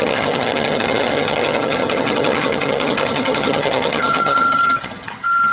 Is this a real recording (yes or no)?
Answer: no